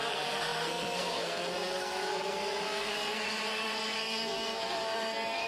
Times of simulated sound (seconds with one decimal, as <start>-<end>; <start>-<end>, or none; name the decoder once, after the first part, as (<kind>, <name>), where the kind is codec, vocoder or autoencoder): 0.0-5.5 (codec, SNAC)